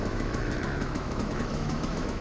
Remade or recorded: remade